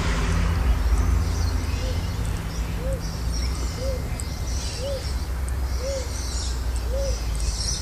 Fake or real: real